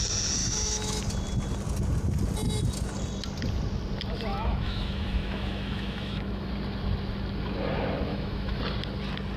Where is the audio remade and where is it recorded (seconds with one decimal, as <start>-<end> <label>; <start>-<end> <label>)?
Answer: 0.0-0.4 recorded; 0.4-1.0 remade; 1.0-4.3 recorded; 4.3-6.5 remade; 6.5-8.1 recorded; 8.1-8.6 remade; 8.6-9.4 recorded